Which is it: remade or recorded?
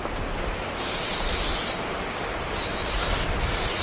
recorded